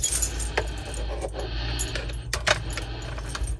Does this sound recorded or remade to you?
recorded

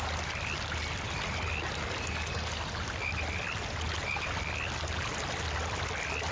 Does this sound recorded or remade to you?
recorded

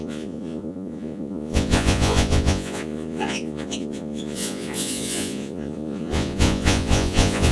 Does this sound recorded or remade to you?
remade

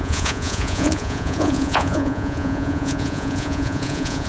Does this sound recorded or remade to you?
remade